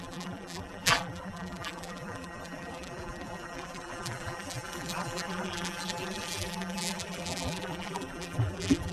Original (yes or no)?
no